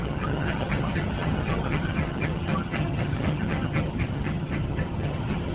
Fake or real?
fake